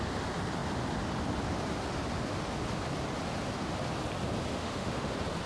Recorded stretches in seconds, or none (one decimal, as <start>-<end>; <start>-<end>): 0.0-4.5; 5.1-5.5